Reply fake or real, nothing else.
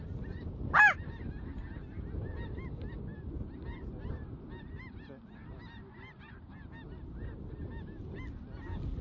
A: real